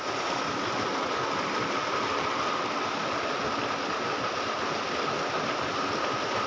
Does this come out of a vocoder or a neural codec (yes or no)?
no